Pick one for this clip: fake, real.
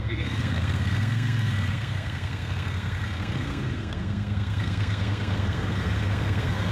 fake